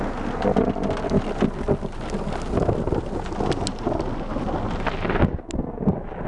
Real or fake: real